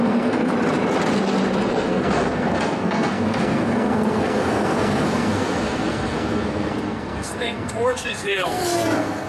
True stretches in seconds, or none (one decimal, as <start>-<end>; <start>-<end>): 0.5-1.6